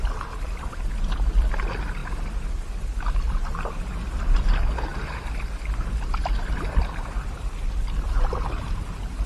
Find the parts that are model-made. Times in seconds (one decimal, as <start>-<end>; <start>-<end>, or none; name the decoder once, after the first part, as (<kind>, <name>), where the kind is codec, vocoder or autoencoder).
none